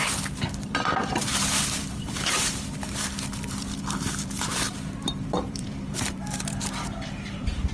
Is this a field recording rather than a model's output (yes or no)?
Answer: no